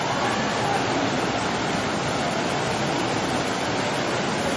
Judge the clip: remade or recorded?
recorded